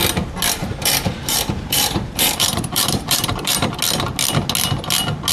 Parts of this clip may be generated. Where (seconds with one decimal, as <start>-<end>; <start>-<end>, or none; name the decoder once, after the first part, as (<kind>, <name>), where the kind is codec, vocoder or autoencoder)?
0.6-3.8 (vocoder, BigVGAN v2)